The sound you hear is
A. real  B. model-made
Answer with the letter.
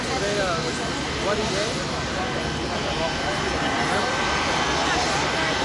A